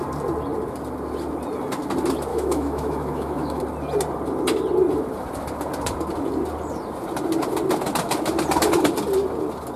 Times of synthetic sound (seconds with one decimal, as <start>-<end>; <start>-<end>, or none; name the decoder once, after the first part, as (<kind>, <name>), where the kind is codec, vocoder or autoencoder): 2.3-3.6 (autoencoder, DAC-VAE)